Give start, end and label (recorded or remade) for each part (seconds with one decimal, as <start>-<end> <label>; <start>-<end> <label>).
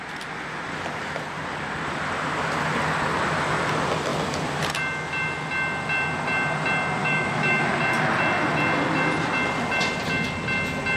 0.0-7.0 recorded; 7.0-7.7 remade; 7.7-11.0 recorded